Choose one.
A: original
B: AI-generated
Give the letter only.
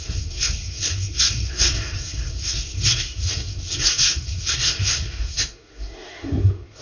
B